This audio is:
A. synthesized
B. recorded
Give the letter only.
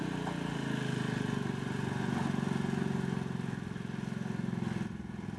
B